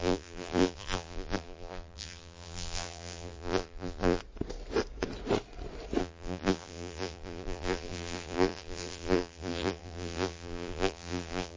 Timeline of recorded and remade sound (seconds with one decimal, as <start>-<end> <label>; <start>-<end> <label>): 0.0-4.2 remade; 4.2-6.0 recorded; 6.0-11.6 remade